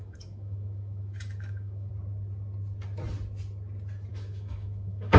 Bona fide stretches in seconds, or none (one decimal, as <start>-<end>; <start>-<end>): 1.9-4.1

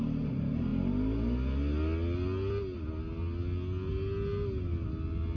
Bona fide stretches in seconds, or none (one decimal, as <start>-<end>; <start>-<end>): 0.0-5.4

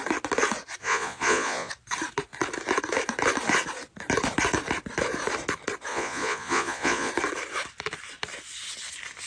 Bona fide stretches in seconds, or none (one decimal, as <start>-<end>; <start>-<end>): 0.0-0.8; 1.7-5.9; 7.1-9.3

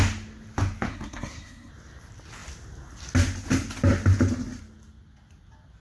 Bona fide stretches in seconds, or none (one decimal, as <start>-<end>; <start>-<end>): 0.0-0.9; 1.7-5.8

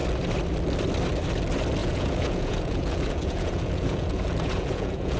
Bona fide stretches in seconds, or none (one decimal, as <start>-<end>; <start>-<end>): 0.0-1.8